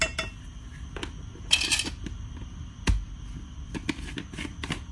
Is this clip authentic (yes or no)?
yes